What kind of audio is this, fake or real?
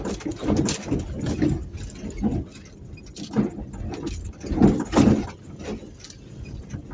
real